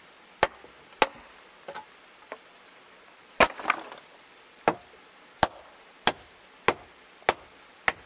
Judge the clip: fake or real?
real